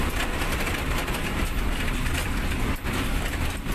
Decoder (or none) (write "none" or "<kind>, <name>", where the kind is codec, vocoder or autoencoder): vocoder, BigVGAN v2